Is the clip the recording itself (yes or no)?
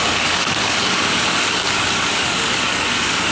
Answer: no